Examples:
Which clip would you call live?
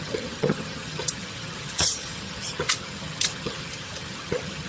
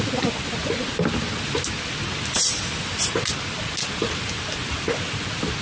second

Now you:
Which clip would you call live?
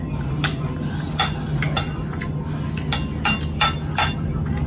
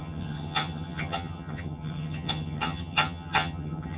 first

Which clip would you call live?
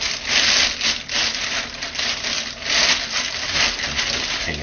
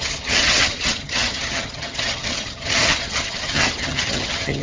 first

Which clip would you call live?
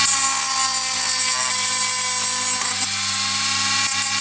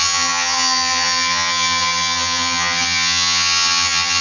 first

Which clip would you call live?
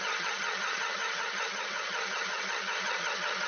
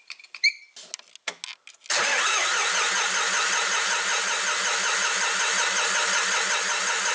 second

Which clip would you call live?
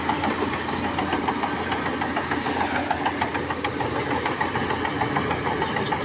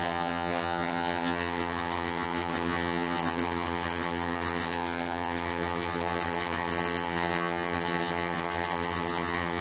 first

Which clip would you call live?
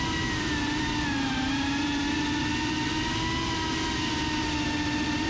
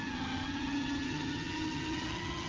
first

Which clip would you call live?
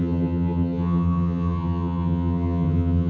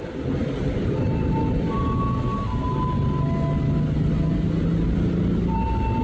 second